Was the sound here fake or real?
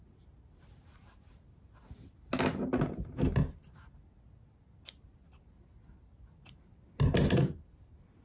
real